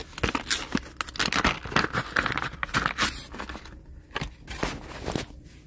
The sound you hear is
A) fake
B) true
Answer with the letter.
B